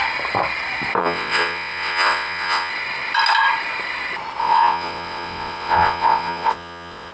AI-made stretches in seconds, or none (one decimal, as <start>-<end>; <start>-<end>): 1.0-2.7; 4.4-7.1